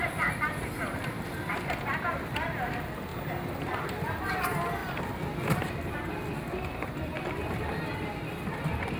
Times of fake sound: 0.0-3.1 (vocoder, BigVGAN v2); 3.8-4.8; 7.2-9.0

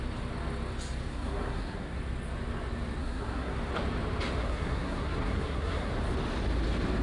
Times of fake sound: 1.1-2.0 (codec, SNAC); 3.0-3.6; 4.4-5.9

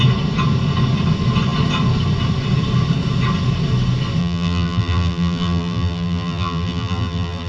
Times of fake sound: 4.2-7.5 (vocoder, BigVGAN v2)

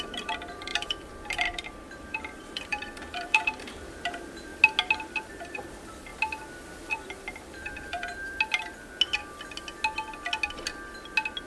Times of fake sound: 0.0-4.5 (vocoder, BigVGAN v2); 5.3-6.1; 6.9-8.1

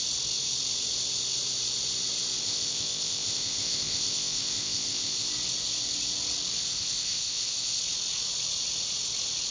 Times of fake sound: 2.4-5.3 (codec, ZipCodec); 6.7-7.8